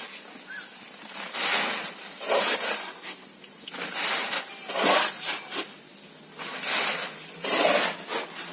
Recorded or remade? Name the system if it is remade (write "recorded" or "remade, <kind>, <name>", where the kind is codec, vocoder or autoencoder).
recorded